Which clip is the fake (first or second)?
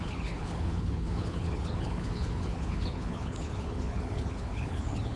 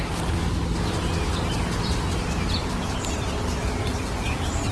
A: first